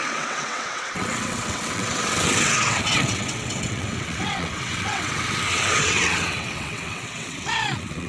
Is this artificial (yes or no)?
yes